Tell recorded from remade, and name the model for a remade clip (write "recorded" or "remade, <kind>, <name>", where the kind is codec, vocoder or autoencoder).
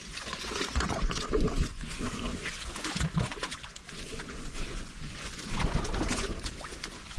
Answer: remade, vocoder, Vocos